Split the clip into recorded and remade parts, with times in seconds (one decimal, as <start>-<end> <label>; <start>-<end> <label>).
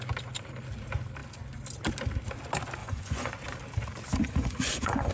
0.0-2.8 recorded; 2.8-3.3 remade; 3.3-4.2 recorded; 4.2-5.1 remade